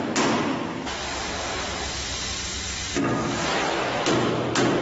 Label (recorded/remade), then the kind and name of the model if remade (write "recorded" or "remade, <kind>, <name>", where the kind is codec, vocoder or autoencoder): recorded